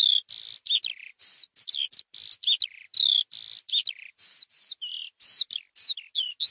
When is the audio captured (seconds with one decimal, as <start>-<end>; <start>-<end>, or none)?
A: 0.0-6.5